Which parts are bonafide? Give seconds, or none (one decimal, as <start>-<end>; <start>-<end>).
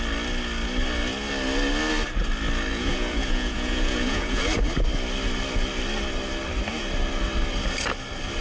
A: 0.0-2.7; 4.4-8.4